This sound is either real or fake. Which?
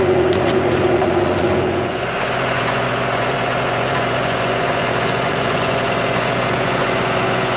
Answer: fake